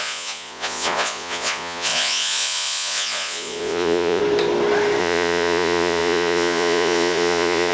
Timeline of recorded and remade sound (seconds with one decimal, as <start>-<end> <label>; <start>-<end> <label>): 0.0-4.2 remade; 4.2-5.0 recorded; 5.0-7.7 remade